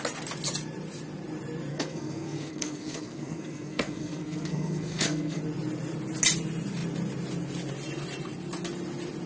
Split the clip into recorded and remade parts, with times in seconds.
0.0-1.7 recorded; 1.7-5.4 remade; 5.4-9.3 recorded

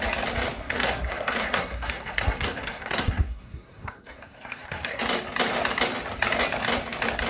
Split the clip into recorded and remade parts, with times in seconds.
0.0-0.6 recorded; 0.6-5.0 remade; 5.0-7.3 recorded